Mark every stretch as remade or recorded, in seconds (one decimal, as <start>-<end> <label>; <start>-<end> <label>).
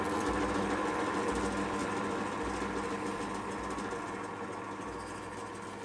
0.0-5.8 recorded